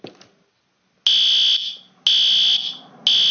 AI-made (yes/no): no